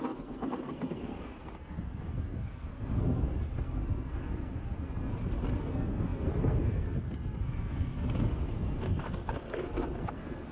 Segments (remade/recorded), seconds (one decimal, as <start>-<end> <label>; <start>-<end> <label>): 0.0-5.1 remade; 5.1-5.6 recorded; 5.6-10.5 remade